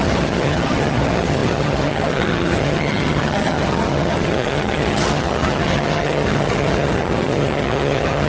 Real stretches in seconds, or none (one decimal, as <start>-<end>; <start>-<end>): none